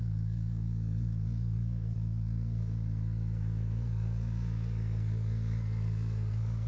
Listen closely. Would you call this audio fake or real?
fake